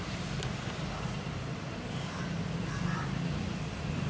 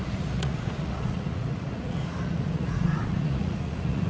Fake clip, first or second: second